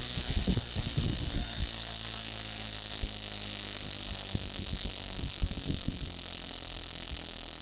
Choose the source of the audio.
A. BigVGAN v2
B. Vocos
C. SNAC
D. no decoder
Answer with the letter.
C